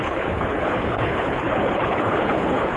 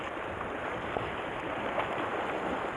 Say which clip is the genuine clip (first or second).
second